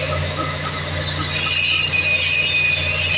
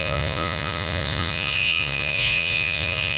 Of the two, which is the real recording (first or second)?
first